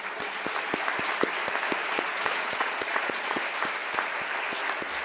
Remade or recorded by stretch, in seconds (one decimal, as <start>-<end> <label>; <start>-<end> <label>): 0.0-1.8 recorded; 1.8-3.4 remade; 3.4-5.0 recorded